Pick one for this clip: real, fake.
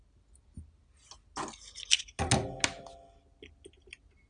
real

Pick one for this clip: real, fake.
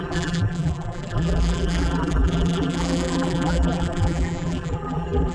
fake